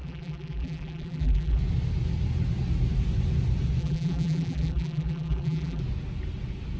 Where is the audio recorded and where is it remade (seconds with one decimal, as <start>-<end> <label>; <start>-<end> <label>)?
0.0-1.6 remade; 1.6-3.8 recorded; 3.8-5.8 remade; 5.8-6.8 recorded